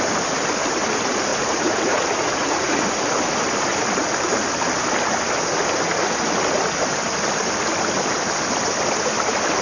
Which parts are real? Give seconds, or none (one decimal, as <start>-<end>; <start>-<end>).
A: 0.0-1.3; 2.8-9.6